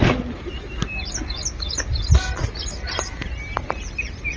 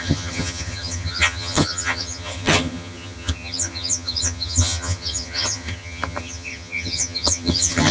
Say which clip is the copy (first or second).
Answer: second